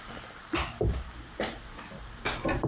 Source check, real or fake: real